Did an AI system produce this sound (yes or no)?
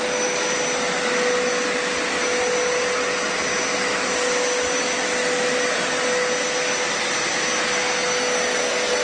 no